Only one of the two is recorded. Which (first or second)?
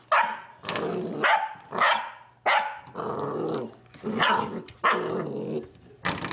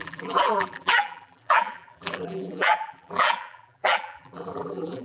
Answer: first